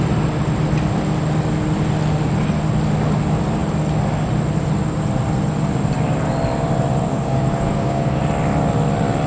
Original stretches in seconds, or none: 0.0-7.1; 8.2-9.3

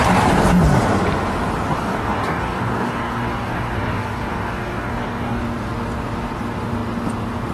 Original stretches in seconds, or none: 0.0-1.7; 5.4-7.5

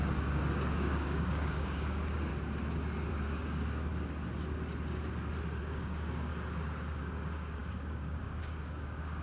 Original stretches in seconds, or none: 2.3-3.1; 3.9-5.6; 6.3-7.0